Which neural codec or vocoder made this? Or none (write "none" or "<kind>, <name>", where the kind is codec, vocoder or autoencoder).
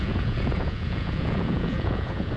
vocoder, Vocos